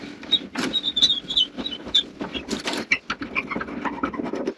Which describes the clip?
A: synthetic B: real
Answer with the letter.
B